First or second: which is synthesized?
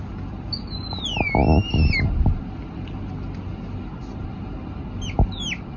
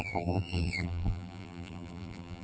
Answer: second